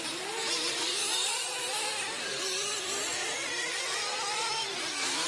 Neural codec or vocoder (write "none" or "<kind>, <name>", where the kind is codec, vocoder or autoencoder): none